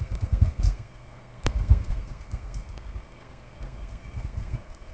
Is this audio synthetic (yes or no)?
yes